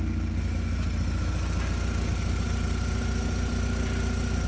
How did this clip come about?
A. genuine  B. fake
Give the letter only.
A